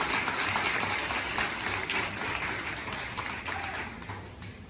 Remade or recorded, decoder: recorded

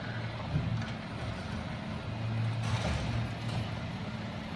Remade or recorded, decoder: recorded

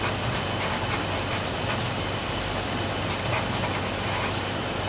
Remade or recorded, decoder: recorded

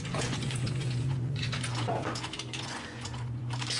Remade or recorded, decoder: remade, vocoder, Vocos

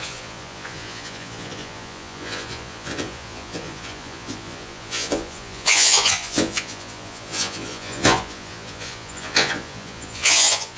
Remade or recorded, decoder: remade, vocoder, Vocos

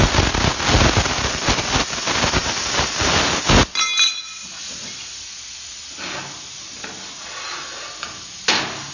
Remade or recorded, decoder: recorded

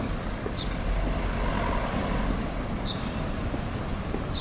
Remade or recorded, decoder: recorded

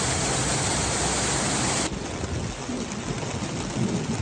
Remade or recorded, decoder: recorded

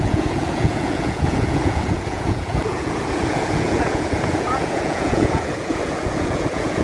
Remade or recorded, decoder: remade, vocoder, Vocos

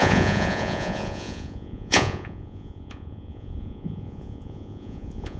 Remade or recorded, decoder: remade, vocoder, Vocos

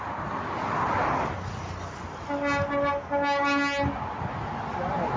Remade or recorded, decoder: recorded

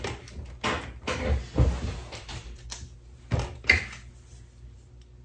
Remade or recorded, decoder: recorded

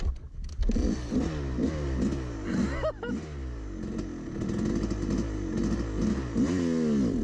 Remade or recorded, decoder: recorded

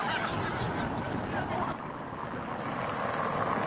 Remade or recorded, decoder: recorded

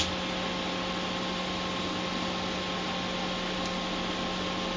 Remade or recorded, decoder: recorded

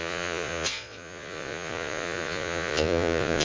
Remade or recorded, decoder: remade, vocoder, Vocos